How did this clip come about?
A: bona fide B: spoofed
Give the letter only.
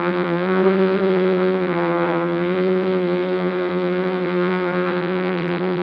B